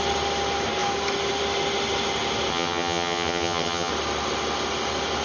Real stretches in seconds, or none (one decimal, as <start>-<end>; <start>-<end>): 0.0-2.5; 3.9-5.2